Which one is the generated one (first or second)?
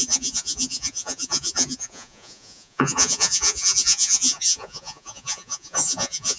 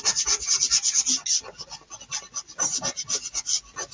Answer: first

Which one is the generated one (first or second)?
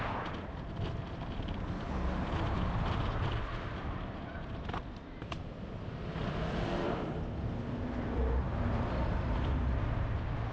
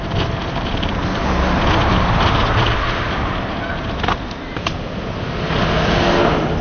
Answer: first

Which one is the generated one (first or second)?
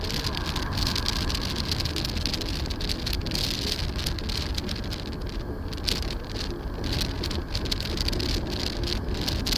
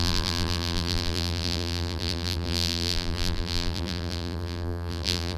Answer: second